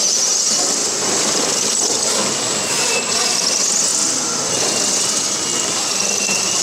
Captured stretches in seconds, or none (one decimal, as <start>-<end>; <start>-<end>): 0.0-5.5